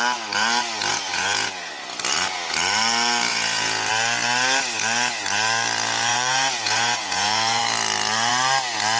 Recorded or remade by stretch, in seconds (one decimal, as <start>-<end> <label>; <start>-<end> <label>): 0.0-0.9 recorded; 0.9-1.7 remade; 1.7-3.3 recorded; 3.3-3.9 remade; 3.9-6.1 recorded; 6.1-7.6 remade; 7.6-9.0 recorded